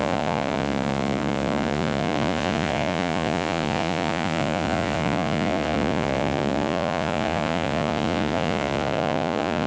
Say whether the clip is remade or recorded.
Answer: remade